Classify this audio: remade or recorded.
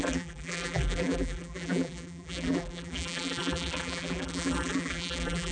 remade